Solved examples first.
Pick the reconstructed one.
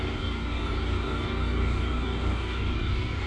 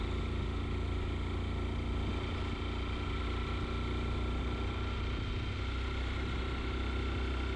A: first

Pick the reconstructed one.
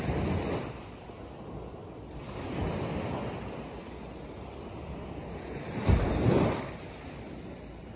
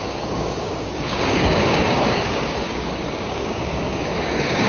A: second